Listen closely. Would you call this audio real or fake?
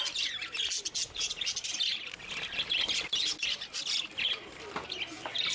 real